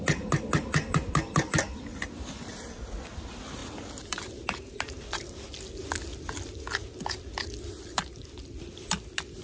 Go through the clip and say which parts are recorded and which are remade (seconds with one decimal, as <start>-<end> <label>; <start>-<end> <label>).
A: 0.0-9.4 recorded